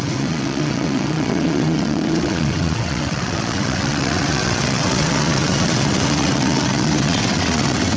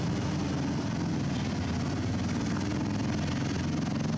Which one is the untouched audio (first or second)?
second